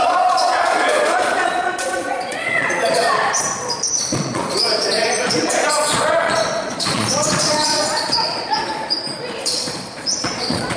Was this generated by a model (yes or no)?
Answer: yes